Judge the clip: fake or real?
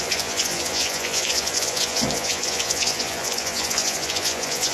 fake